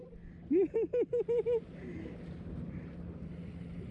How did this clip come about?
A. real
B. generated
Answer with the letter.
A